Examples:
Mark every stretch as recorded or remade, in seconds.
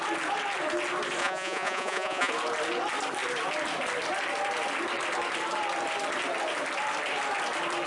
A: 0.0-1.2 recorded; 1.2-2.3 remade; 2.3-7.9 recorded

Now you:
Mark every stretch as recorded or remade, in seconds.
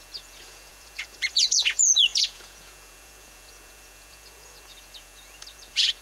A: 0.0-6.0 remade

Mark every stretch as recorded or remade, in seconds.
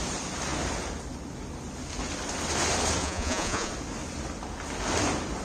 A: 0.0-3.0 recorded; 3.0-3.7 remade; 3.7-5.4 recorded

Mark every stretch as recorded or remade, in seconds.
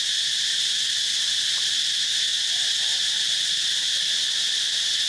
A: 0.0-5.1 recorded